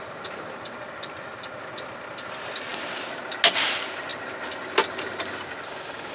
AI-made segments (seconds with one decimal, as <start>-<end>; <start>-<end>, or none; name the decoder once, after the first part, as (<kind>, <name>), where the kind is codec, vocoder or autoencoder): none